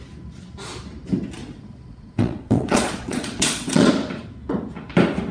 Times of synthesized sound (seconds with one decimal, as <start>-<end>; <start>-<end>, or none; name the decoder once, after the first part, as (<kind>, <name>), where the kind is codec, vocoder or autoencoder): 1.4-3.9 (vocoder, Vocos)